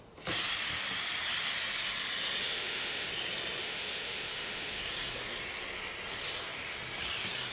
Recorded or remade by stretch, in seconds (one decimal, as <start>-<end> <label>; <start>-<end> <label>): 0.0-2.4 recorded; 2.4-3.1 remade; 3.1-3.6 recorded; 3.6-4.8 remade; 4.8-7.5 recorded